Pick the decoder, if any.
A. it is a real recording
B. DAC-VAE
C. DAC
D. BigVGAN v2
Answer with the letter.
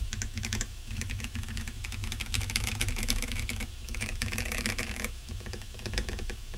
B